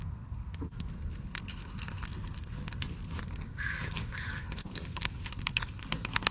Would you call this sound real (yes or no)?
no